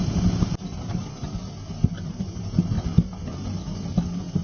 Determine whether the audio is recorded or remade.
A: recorded